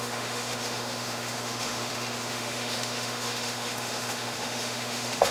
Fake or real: fake